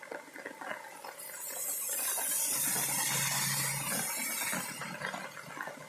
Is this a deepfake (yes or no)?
no